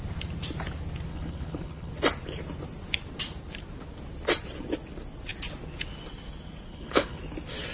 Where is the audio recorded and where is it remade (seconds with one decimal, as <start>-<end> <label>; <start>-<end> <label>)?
0.0-1.1 recorded; 1.1-1.9 remade; 1.9-6.7 recorded; 6.7-7.2 remade; 7.2-7.7 recorded